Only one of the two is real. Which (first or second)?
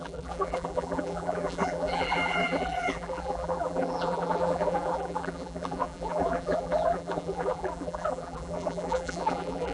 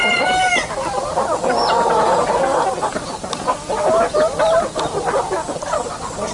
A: second